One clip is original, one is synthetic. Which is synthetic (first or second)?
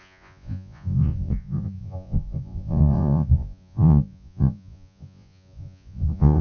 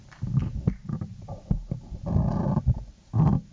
first